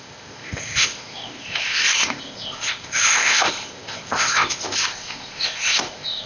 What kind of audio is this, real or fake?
fake